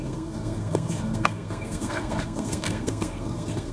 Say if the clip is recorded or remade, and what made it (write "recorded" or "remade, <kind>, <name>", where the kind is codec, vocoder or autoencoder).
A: remade, codec, SNAC